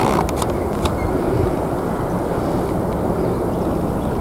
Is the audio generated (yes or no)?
no